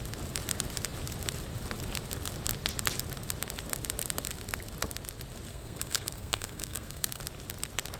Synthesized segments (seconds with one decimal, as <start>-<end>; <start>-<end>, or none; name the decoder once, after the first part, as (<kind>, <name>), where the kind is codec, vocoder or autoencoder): 5.5-7.2 (codec, SNAC)